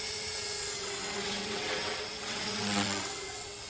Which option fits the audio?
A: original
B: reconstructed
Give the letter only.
B